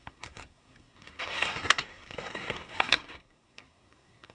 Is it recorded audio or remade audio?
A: remade